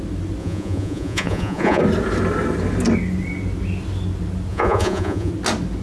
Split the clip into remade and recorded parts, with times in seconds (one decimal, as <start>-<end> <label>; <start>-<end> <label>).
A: 0.0-0.4 recorded; 0.4-1.8 remade; 1.8-4.5 recorded; 4.5-5.3 remade; 5.3-5.8 recorded